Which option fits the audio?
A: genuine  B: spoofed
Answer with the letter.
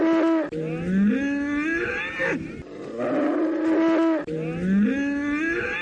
A